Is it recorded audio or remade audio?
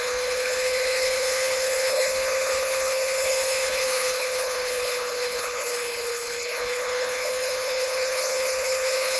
remade